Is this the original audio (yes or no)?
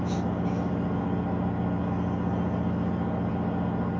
yes